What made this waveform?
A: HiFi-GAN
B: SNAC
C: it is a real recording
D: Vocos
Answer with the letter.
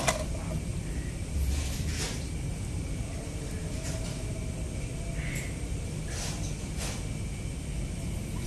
C